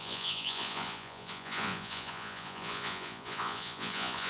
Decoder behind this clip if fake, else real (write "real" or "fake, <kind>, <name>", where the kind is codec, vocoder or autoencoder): fake, vocoder, Vocos